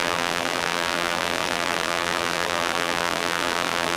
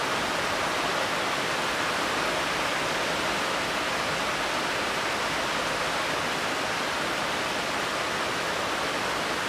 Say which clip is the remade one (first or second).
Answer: first